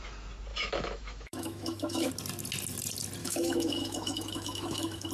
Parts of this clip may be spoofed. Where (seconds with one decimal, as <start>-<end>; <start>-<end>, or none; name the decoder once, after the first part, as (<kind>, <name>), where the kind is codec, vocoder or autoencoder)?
0.5-2.1 (autoencoder, DAC-VAE); 3.2-5.1